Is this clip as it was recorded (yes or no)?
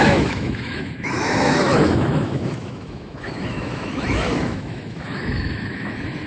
no